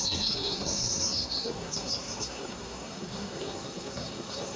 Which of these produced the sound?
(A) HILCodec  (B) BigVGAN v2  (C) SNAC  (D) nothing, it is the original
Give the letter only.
C